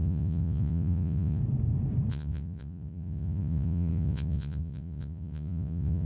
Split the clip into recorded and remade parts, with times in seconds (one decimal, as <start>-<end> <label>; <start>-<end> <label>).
0.0-1.4 remade; 1.4-2.1 recorded; 2.1-6.1 remade